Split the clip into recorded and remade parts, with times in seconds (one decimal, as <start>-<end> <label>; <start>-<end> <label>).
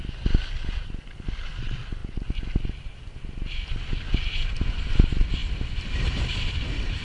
0.0-7.0 recorded